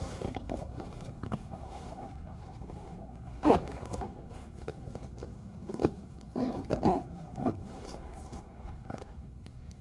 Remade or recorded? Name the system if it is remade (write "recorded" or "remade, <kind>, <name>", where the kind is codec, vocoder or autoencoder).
remade, codec, SNAC